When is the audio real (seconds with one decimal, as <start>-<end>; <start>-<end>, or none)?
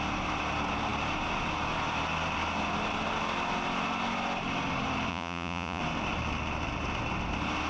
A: 0.0-5.1; 5.8-7.7